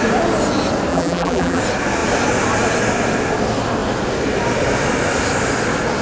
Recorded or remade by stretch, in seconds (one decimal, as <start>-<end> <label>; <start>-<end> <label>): 0.0-0.9 recorded; 0.9-1.6 remade; 1.6-6.0 recorded